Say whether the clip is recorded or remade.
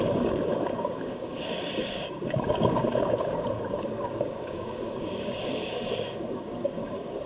remade